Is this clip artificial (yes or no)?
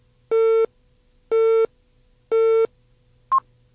no